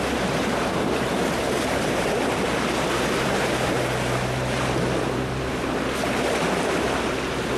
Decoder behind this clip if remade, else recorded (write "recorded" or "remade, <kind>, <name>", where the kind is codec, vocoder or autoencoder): remade, vocoder, BigVGAN v2